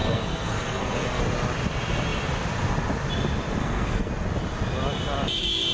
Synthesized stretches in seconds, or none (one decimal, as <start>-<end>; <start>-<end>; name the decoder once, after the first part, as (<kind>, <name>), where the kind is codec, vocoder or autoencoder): 0.0-1.2 (codec, SNAC); 3.6-4.1